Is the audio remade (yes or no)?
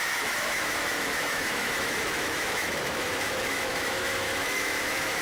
yes